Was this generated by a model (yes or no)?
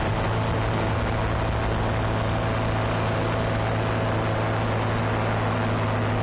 no